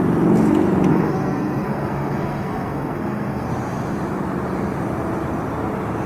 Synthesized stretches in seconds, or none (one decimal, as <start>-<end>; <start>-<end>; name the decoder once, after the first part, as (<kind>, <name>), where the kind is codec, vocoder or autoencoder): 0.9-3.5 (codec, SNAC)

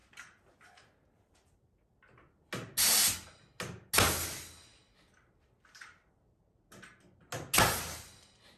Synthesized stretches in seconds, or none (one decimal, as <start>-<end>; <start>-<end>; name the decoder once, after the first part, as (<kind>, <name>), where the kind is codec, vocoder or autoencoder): none

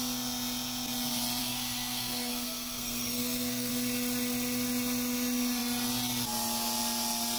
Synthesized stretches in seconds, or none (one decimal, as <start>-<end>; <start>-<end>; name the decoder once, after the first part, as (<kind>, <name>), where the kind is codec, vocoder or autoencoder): 1.4-3.7 (codec, SNAC)